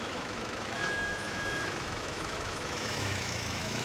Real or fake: fake